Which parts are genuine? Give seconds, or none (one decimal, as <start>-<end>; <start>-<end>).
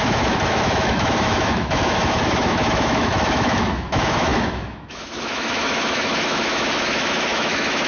none